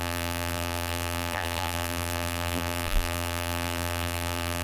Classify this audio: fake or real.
fake